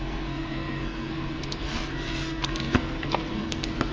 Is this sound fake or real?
fake